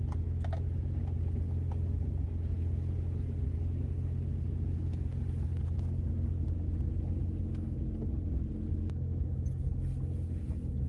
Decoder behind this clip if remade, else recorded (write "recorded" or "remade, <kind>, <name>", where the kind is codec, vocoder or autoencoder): recorded